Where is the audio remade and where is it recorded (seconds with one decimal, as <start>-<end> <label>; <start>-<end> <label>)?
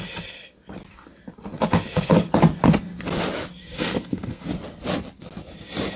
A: 0.0-3.6 recorded; 3.6-4.4 remade; 4.4-6.0 recorded